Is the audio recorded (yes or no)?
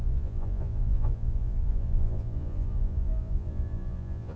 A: no